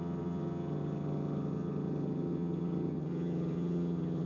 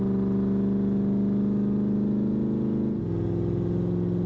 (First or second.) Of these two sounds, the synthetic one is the first